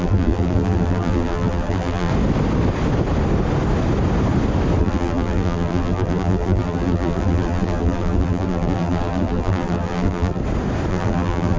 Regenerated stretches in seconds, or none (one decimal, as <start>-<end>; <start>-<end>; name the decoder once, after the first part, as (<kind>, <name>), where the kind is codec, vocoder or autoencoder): 0.0-2.1 (vocoder, BigVGAN v2); 4.8-10.4; 10.9-11.6